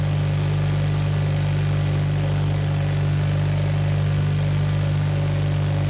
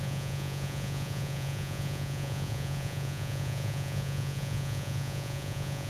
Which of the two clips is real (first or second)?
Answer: first